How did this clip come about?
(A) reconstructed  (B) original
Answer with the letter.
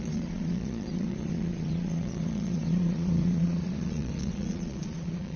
A